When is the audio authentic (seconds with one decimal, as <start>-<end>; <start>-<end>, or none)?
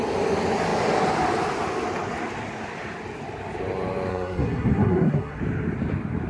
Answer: 0.0-4.1; 5.4-6.3